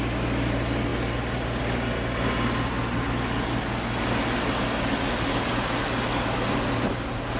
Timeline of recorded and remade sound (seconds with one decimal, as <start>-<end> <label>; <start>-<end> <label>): 0.0-7.4 recorded